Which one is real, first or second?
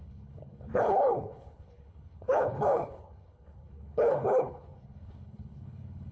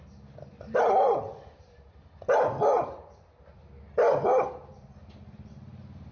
second